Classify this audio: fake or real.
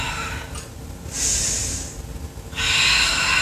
real